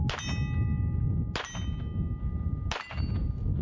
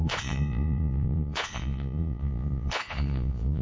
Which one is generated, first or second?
second